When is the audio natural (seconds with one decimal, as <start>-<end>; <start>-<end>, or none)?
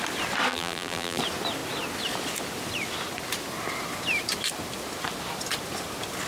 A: 0.0-0.5; 1.2-6.3